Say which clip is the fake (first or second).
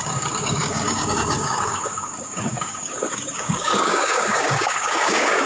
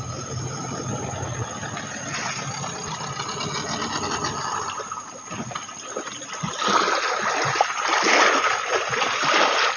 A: first